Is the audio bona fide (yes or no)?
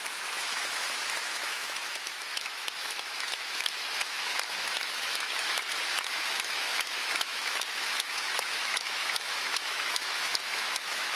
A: no